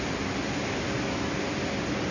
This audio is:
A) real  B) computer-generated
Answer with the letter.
A